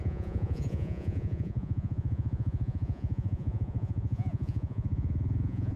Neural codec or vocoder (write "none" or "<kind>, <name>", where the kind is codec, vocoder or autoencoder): vocoder, Vocos